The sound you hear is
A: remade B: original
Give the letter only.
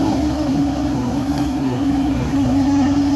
A